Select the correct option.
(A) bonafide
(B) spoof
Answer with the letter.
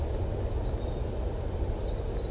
A